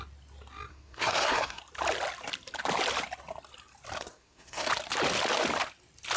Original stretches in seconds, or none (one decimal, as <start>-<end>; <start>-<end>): 0.0-0.7; 1.6-4.1; 4.7-6.2